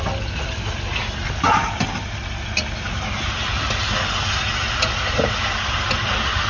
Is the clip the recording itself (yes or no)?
yes